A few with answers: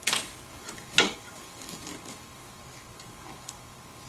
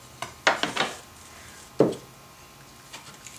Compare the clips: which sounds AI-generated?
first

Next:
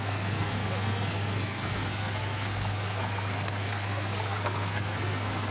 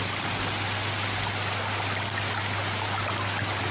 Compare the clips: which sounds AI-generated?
first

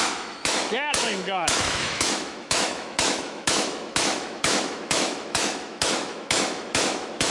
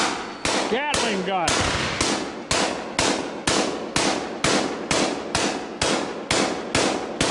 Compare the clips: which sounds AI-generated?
first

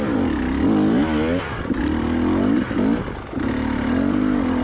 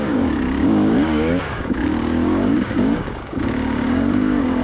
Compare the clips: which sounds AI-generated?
second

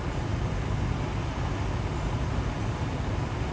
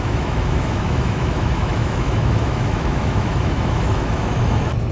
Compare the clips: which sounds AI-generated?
second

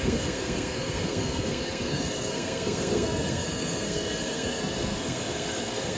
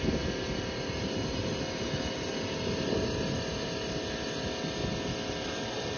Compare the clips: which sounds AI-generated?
first